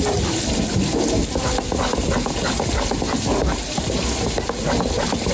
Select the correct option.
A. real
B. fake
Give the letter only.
A